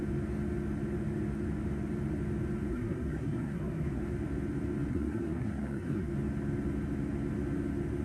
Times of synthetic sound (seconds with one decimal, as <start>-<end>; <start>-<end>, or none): 2.7-4.0; 4.9-6.1